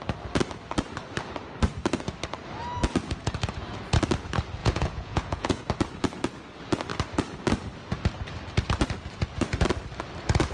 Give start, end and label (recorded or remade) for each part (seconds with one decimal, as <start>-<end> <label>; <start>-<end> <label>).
0.0-4.6 recorded; 4.6-5.6 remade; 5.6-10.5 recorded